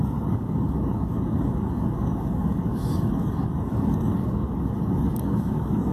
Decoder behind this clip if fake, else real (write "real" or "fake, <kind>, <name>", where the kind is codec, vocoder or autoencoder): fake, codec, DAC